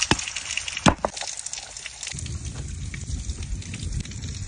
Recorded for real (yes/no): yes